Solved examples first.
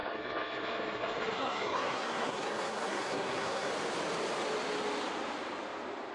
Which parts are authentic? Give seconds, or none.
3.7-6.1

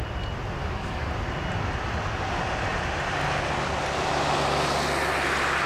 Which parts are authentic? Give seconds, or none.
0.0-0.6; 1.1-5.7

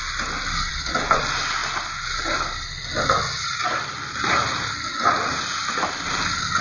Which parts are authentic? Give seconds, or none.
0.0-0.7; 1.2-6.6